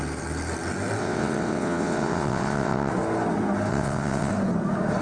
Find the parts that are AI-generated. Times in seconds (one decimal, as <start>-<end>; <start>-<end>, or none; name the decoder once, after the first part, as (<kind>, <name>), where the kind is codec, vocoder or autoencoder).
1.0-2.9 (vocoder, WaveNeXt); 3.7-4.3

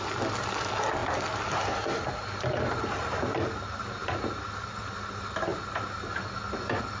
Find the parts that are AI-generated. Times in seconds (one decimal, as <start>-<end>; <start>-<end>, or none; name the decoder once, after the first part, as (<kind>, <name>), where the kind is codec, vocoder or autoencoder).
none

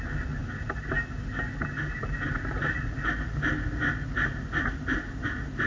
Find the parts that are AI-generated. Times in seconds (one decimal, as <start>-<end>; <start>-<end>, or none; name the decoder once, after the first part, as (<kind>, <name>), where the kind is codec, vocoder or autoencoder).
none

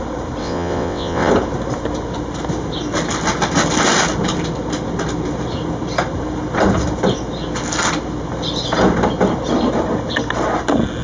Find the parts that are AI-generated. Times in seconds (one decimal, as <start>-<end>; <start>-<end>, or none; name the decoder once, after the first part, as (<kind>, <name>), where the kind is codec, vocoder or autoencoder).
0.4-1.3 (vocoder, WaveNeXt)